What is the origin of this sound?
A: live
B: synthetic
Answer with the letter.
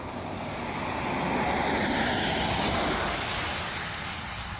A